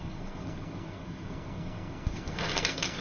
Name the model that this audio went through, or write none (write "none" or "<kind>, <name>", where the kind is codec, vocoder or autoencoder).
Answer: codec, SNAC